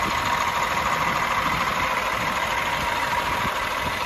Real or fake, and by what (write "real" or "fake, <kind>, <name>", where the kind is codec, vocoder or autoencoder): real